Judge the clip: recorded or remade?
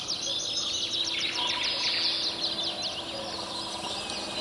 recorded